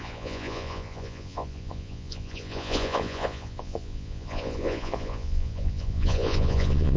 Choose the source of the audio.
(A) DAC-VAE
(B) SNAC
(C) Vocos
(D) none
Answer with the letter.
C